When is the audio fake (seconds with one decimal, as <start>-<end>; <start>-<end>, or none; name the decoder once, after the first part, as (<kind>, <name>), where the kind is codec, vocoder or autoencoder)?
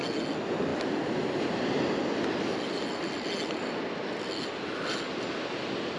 none